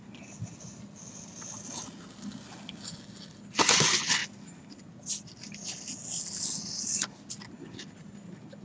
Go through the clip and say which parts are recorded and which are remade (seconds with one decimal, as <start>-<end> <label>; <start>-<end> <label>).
0.0-8.6 recorded